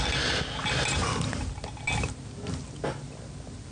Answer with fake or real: real